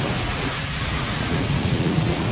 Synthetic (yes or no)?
yes